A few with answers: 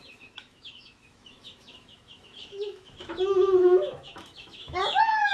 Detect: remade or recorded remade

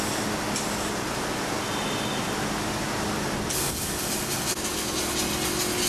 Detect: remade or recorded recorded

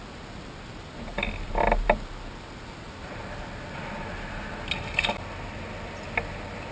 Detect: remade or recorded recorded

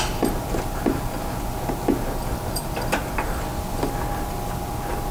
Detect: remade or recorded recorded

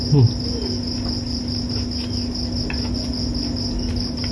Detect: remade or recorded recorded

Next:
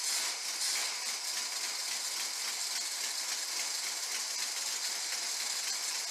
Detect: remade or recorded recorded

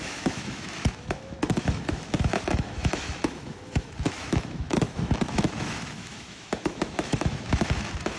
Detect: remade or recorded remade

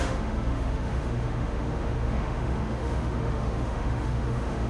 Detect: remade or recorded remade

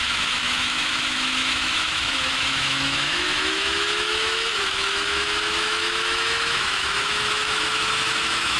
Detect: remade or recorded remade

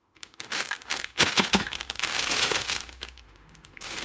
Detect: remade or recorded remade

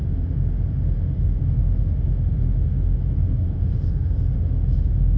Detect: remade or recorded remade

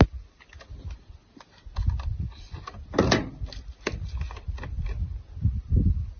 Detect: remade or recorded recorded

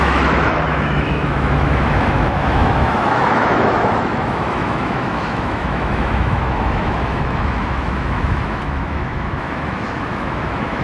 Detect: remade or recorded remade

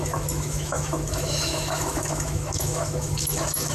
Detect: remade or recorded remade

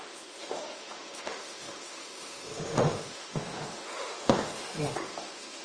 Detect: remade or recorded remade